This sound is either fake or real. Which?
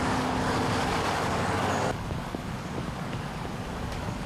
fake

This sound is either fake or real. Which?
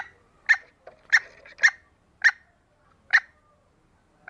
real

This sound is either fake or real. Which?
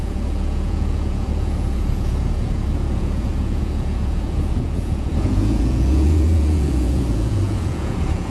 fake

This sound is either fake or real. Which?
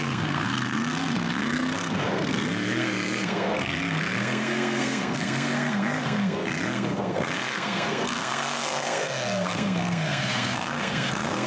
fake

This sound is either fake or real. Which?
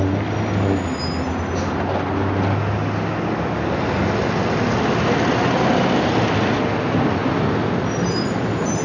real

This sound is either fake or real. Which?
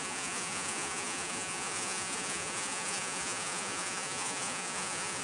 fake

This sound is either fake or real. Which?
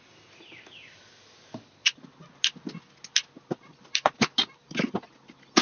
real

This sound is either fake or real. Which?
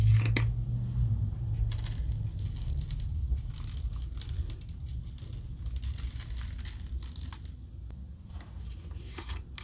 real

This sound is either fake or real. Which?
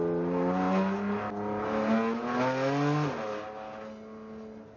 real